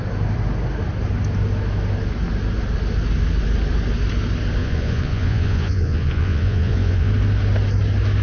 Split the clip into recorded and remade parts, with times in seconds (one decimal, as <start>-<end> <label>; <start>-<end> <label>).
0.0-4.6 recorded; 4.6-7.1 remade; 7.1-8.2 recorded